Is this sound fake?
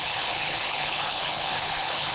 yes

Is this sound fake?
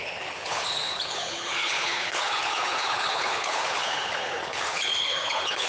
yes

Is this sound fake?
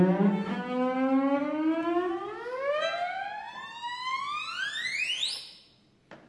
no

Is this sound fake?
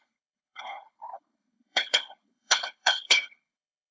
yes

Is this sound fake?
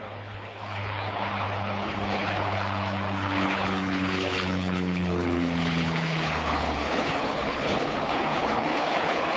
yes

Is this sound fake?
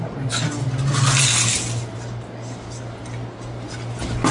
no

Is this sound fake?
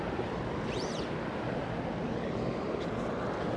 no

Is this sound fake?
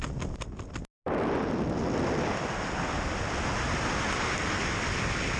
no